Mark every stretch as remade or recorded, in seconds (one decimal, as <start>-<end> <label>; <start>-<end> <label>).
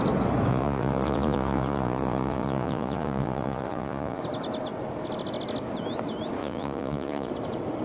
0.0-0.5 recorded; 0.5-4.2 remade; 4.2-6.4 recorded; 6.4-7.3 remade; 7.3-7.8 recorded